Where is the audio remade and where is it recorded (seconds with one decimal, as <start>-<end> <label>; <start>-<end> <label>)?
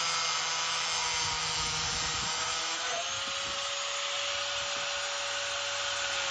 0.0-6.3 recorded